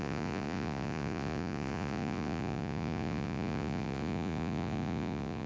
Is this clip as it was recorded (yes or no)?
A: no